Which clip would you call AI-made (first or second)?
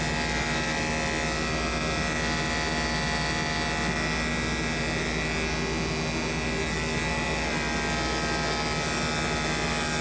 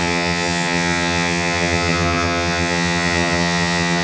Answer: second